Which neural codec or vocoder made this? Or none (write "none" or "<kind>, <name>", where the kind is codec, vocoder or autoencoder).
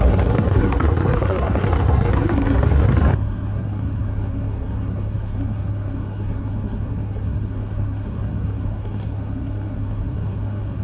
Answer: codec, SNAC